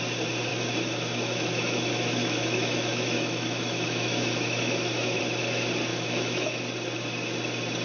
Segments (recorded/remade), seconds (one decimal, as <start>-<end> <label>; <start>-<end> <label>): 0.0-0.5 recorded; 0.5-5.2 remade; 5.2-5.9 recorded; 5.9-6.6 remade; 6.6-7.8 recorded